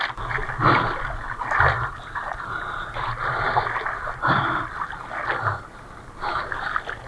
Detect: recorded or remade recorded